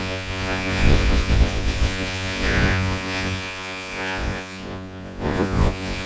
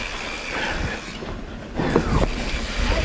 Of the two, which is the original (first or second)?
second